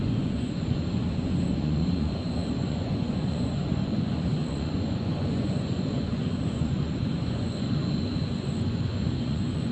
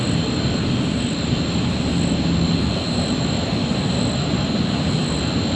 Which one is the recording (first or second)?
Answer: second